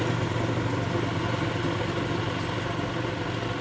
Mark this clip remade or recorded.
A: recorded